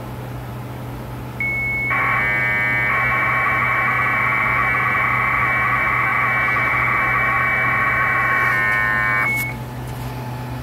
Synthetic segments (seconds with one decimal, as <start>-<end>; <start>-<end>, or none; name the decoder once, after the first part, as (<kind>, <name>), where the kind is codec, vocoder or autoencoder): none